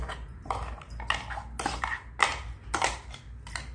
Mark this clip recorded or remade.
recorded